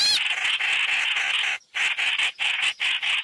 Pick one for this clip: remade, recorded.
recorded